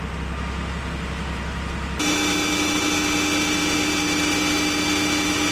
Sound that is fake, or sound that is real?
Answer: real